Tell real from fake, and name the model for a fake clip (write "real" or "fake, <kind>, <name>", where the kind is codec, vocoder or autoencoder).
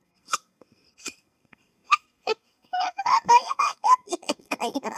fake, codec, SNAC